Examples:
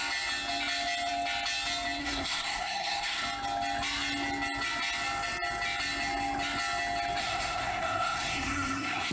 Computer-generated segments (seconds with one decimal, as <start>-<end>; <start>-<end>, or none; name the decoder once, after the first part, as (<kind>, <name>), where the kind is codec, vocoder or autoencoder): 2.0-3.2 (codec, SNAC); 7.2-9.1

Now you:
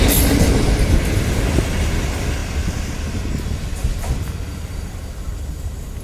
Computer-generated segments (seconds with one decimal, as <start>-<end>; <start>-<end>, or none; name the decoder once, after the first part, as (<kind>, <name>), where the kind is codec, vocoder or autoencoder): none

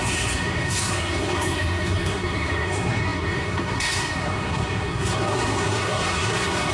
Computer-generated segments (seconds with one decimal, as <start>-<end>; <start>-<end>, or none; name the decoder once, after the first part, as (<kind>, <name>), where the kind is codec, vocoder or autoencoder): 0.0-6.7 (codec, SNAC)

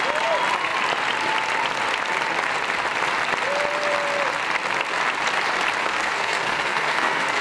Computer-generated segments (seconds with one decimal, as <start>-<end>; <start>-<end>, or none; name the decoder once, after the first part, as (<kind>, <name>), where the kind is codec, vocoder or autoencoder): 5.8-7.4 (codec, SNAC)

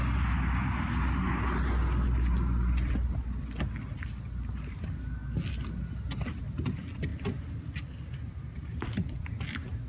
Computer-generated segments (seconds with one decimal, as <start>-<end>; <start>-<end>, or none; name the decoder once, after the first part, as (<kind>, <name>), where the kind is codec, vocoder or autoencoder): none

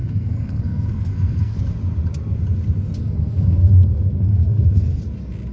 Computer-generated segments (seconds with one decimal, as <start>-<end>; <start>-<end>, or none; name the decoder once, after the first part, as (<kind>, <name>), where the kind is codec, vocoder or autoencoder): 0.0-1.6 (codec, SNAC); 3.0-5.0

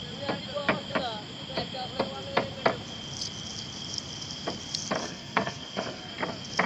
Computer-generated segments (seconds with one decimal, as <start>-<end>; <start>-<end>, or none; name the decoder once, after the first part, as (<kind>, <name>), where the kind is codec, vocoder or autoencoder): 5.0-6.1 (codec, SNAC)